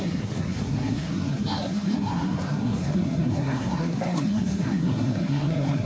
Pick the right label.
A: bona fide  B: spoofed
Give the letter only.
B